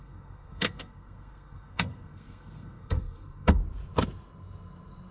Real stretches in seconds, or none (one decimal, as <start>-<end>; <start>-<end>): 3.6-5.1